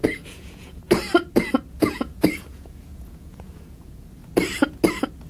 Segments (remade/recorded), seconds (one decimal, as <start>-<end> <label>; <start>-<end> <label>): 0.0-0.8 remade; 0.8-1.7 recorded; 1.7-4.2 remade; 4.2-5.3 recorded